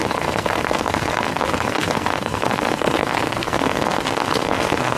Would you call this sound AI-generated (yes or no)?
yes